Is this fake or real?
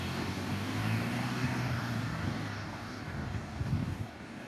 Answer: fake